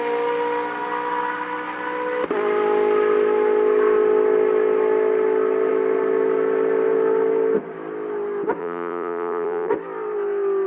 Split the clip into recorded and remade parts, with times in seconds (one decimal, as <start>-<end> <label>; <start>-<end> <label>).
0.0-8.6 recorded; 8.6-9.7 remade; 9.7-10.7 recorded